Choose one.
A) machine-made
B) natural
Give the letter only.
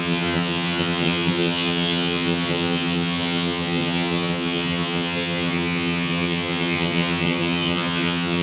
A